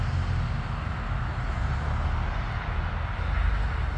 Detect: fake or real real